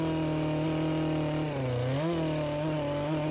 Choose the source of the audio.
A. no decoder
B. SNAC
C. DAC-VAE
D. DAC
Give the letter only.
A